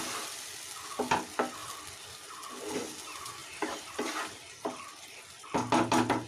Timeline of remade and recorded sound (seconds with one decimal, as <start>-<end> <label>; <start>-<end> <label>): 0.0-3.4 recorded; 3.4-4.8 remade; 4.8-6.3 recorded